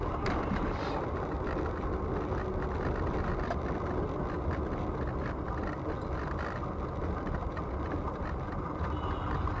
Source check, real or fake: real